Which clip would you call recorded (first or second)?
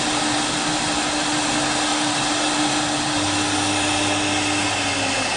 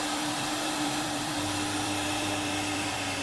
first